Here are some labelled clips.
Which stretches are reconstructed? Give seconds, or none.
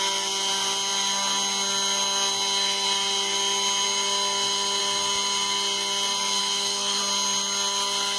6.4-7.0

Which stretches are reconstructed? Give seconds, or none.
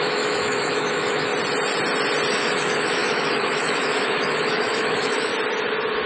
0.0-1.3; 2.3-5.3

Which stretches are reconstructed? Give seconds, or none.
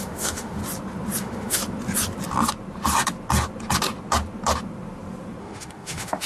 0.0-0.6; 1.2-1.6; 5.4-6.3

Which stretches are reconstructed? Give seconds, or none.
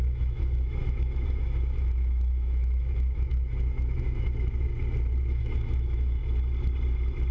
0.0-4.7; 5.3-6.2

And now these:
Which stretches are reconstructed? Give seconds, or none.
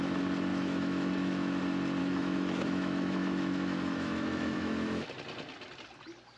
0.5-1.6; 2.0-5.1